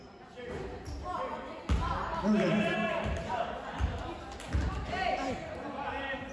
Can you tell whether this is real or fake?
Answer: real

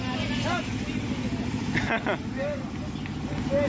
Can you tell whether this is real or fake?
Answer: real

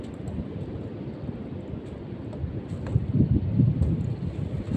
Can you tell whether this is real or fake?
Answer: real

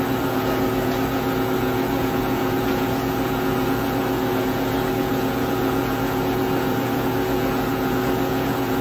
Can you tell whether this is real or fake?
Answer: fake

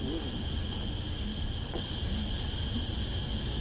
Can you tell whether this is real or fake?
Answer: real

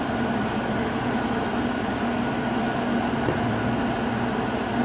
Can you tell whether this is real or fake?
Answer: real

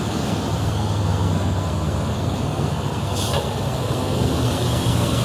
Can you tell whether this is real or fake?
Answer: fake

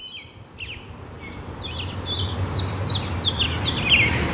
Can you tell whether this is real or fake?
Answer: real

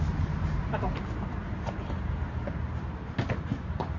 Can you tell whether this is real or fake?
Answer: real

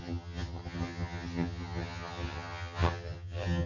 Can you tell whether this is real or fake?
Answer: fake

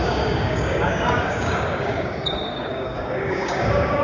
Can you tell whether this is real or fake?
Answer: fake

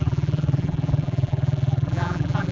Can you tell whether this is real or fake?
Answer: fake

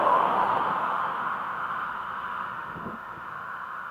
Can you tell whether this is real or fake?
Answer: fake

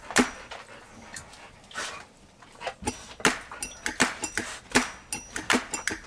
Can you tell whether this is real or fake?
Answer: real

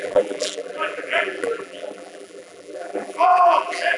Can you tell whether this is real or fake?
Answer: fake